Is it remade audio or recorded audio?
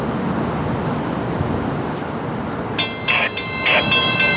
recorded